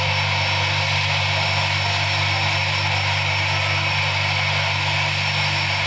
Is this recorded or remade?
recorded